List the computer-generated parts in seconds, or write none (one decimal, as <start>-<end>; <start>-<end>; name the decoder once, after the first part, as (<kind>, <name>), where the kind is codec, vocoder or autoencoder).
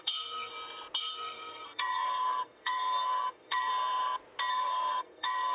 0.0-0.5 (codec, SNAC); 1.0-3.7; 4.5-5.5